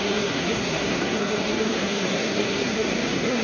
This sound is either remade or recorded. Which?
remade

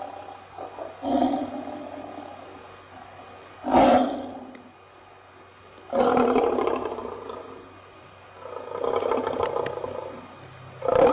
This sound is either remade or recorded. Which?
recorded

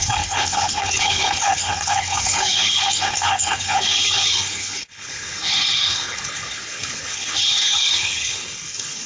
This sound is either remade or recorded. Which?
remade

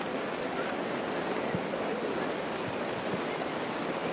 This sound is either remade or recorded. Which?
recorded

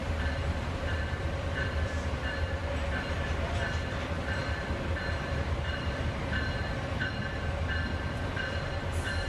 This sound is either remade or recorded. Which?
remade